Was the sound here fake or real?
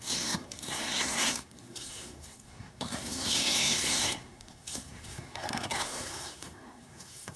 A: fake